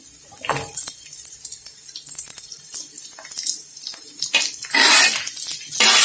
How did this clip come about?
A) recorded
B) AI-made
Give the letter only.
A